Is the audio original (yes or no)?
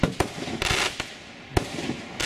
yes